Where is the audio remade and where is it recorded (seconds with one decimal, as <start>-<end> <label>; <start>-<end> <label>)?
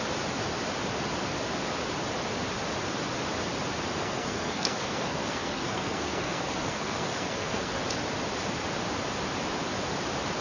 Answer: 0.0-4.0 recorded; 4.0-7.7 remade; 7.7-10.4 recorded